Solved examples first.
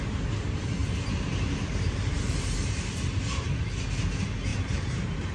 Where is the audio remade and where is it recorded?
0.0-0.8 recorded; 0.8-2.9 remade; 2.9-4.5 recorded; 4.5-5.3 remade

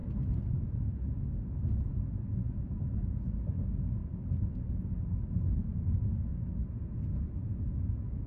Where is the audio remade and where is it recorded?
0.0-0.6 recorded; 0.6-4.0 remade; 4.0-6.7 recorded; 6.7-8.3 remade

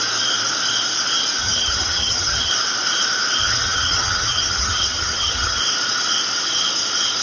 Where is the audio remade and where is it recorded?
0.0-1.4 recorded; 1.4-2.5 remade; 2.5-3.4 recorded; 3.4-5.6 remade; 5.6-7.2 recorded

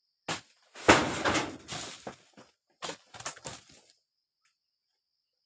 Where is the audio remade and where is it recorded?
0.0-5.5 recorded

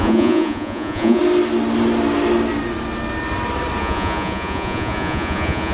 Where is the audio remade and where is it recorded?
0.0-1.2 remade; 1.2-3.8 recorded; 3.8-5.7 remade

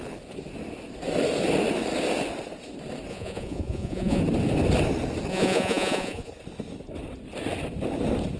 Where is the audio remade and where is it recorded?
0.0-3.1 recorded; 3.1-4.2 remade; 4.2-5.3 recorded; 5.3-6.3 remade; 6.3-8.4 recorded